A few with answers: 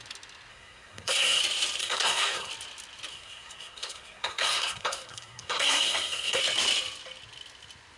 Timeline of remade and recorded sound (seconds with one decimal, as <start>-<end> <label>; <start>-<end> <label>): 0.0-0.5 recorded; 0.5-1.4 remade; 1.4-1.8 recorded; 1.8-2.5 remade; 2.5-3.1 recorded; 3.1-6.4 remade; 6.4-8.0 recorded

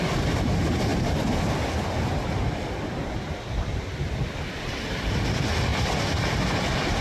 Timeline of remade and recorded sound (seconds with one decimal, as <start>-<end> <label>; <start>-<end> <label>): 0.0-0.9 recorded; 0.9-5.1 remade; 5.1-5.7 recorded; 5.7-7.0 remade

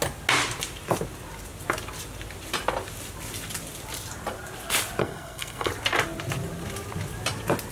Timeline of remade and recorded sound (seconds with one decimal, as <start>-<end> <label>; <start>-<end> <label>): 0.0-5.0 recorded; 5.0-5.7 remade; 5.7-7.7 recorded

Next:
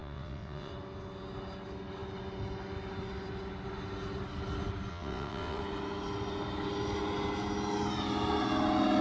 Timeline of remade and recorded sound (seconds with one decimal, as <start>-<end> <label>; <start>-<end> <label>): 0.0-0.7 remade; 0.7-4.9 recorded; 4.9-5.6 remade; 5.6-9.0 recorded

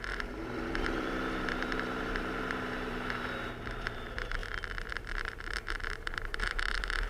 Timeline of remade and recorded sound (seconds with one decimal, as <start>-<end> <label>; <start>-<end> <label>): 0.0-4.4 remade; 4.4-4.9 recorded; 4.9-7.1 remade

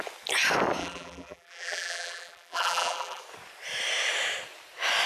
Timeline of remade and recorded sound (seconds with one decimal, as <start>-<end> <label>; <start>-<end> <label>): 0.0-0.8 recorded; 0.8-3.2 remade; 3.2-5.1 recorded